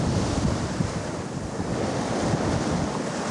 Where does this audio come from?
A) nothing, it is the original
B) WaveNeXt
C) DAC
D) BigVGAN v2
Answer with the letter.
D